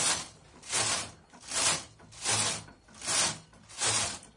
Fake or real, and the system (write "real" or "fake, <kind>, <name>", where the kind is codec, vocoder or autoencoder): real